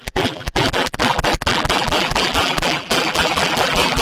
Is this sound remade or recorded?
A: remade